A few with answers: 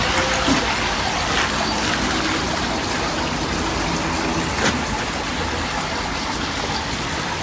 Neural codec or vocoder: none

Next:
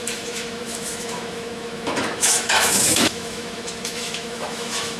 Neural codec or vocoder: autoencoder, DAC-VAE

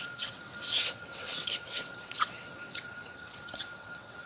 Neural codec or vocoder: vocoder, WaveNeXt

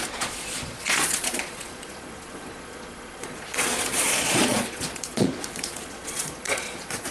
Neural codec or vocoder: vocoder, Vocos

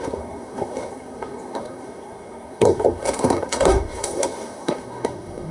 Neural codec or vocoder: codec, SNAC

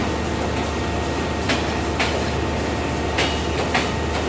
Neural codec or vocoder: none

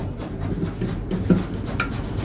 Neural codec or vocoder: none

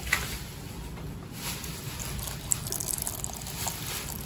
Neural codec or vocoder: none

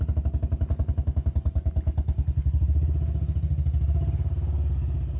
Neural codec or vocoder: none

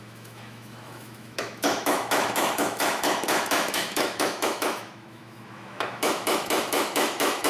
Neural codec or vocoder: autoencoder, DAC-VAE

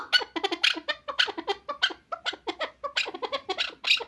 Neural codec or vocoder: none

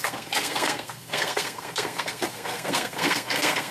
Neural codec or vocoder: codec, SNAC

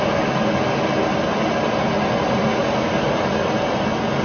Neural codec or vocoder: none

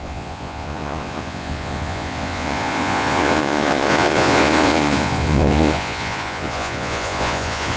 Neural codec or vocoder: vocoder, Vocos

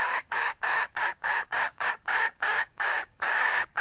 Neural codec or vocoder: codec, DAC